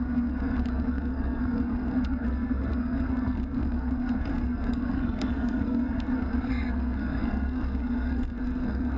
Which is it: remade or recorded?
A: remade